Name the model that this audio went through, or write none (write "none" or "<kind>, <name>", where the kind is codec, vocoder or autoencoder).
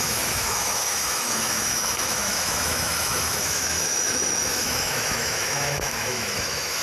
autoencoder, DAC-VAE